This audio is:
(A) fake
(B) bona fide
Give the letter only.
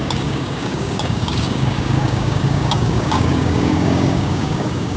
A